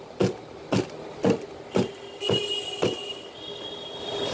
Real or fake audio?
real